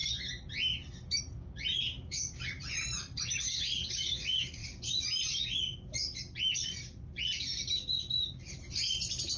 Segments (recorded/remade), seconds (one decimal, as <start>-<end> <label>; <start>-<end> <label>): 0.0-9.4 remade

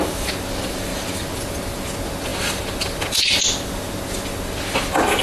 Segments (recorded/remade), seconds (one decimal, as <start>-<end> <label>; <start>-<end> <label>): 0.0-5.2 recorded

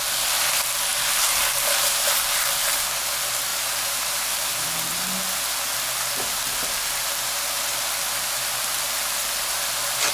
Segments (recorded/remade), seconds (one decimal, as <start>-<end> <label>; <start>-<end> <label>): 0.0-0.9 recorded; 0.9-2.2 remade; 2.2-3.5 recorded; 3.5-4.5 remade; 4.5-10.1 recorded

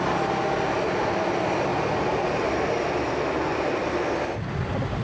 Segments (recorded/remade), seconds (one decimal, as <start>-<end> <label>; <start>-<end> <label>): 0.0-1.7 recorded; 1.7-2.5 remade; 2.5-3.8 recorded; 3.8-5.0 remade

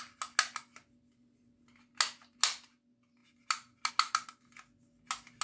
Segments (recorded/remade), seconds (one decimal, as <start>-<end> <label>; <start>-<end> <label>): 0.0-5.4 recorded

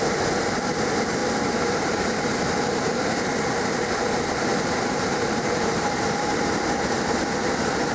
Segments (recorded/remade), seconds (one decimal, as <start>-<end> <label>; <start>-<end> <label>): 0.0-1.2 recorded; 1.2-2.3 remade; 2.3-4.5 recorded; 4.5-6.6 remade; 6.6-7.9 recorded

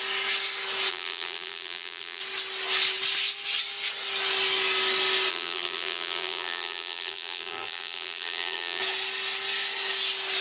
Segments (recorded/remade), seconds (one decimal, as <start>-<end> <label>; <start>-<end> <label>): 0.0-0.9 recorded; 0.9-2.2 remade; 2.2-5.3 recorded; 5.3-8.8 remade; 8.8-10.4 recorded

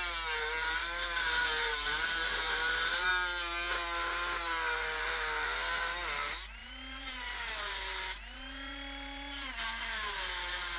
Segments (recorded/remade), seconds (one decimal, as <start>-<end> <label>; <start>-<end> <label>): 0.0-0.8 recorded; 0.8-3.1 remade; 3.1-6.6 recorded; 6.6-10.3 remade; 10.3-10.8 recorded